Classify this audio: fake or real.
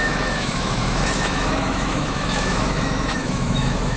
fake